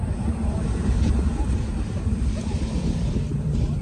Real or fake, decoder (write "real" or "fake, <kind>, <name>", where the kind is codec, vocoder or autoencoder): fake, vocoder, BigVGAN v2